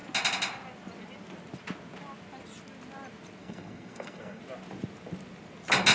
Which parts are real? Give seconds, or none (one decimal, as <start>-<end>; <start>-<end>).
0.0-3.4; 4.4-5.9